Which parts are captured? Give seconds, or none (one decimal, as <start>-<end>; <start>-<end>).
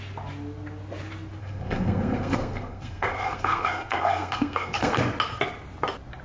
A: 0.0-1.4; 5.0-6.2